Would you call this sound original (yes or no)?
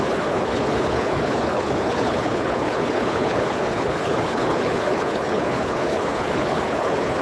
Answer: no